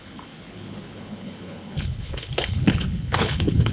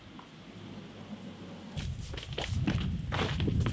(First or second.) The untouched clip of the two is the second